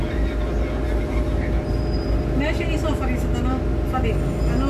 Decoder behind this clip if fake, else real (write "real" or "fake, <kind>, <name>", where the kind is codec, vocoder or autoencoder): real